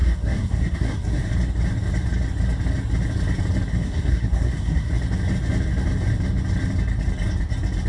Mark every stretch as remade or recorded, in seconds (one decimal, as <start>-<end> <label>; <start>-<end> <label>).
0.0-1.3 remade; 1.3-3.7 recorded; 3.7-4.9 remade; 4.9-7.9 recorded